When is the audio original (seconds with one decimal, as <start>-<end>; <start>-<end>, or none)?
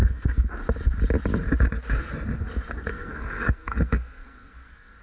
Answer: 0.5-2.9